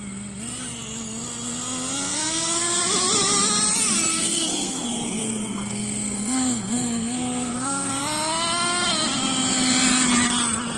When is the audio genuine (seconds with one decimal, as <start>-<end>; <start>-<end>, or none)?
0.0-2.1; 2.8-4.1; 8.0-10.8